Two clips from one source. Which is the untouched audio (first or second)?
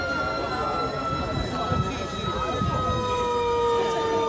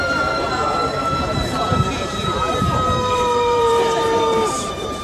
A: first